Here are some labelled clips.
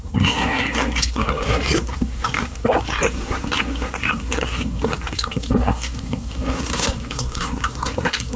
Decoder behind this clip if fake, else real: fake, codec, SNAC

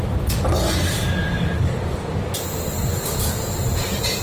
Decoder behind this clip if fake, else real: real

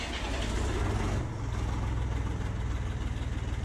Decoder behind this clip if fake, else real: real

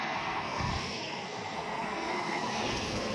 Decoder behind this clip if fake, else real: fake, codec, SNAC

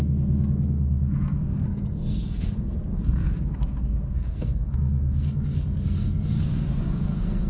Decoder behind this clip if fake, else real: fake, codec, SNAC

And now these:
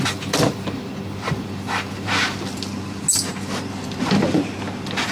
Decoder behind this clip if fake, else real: real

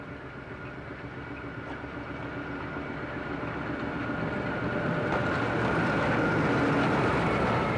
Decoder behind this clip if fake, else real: real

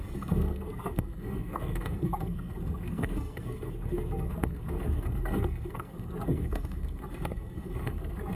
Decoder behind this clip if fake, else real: fake, codec, SNAC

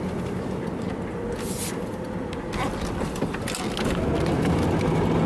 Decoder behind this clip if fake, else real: real